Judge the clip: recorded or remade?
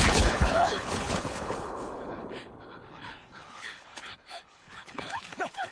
remade